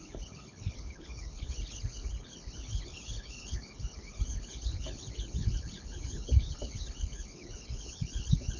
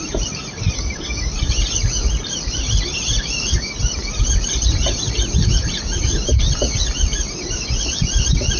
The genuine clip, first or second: second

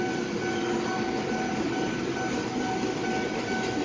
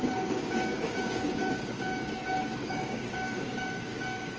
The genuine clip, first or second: first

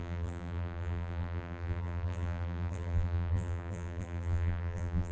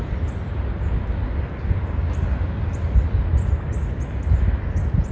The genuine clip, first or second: second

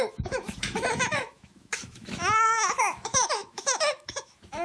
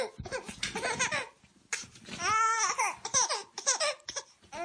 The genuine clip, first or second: second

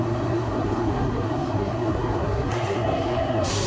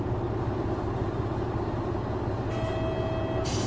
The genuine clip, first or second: second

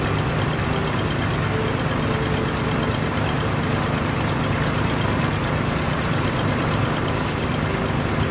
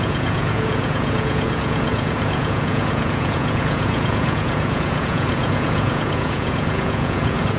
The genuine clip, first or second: first